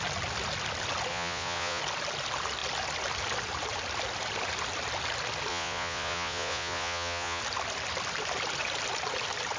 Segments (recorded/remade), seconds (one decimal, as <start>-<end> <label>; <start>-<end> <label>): 0.0-1.1 recorded; 1.1-1.8 remade; 1.8-5.5 recorded; 5.5-7.4 remade; 7.4-9.6 recorded